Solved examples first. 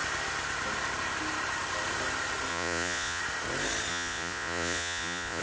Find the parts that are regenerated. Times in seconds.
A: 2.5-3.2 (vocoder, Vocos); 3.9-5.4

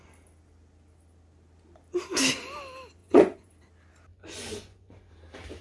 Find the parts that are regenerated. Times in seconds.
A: 3.0-3.5 (vocoder, Vocos); 4.1-5.1

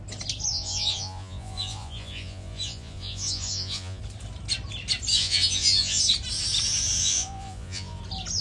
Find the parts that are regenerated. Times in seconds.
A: 0.5-4.0 (vocoder, Vocos); 5.1-6.0; 7.0-8.0

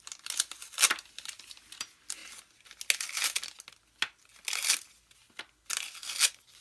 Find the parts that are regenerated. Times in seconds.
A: none

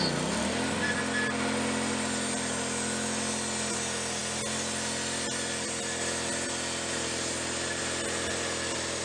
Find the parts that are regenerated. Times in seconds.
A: none